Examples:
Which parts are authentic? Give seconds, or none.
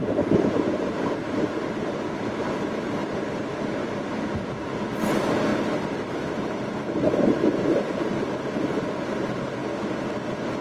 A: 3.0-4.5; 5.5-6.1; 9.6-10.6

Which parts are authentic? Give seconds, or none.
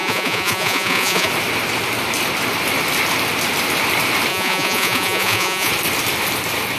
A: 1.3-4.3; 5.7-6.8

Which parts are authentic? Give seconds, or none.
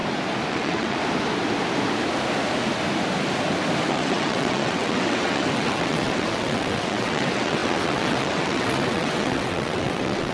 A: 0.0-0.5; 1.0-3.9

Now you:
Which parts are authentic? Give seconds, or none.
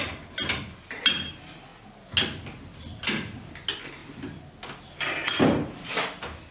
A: 0.0-6.5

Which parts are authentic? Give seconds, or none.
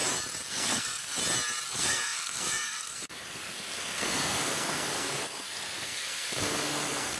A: 0.0-0.5; 1.2-1.7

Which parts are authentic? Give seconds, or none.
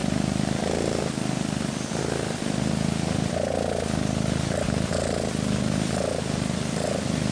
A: 0.0-7.3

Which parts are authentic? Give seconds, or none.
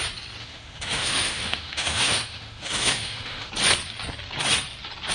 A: 0.0-0.4; 3.5-5.1